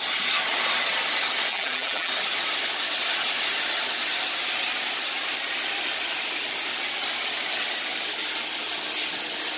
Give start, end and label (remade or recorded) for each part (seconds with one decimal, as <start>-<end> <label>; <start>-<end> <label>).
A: 0.0-1.5 recorded; 1.5-2.1 remade; 2.1-9.6 recorded